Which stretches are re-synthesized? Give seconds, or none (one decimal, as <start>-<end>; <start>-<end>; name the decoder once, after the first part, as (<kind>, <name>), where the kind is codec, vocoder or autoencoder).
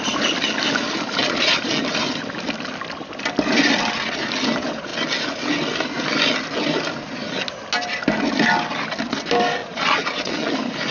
1.2-1.8 (vocoder, Vocos); 9.6-10.5